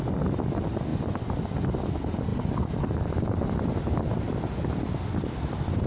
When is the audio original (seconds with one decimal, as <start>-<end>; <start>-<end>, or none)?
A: 0.0-5.9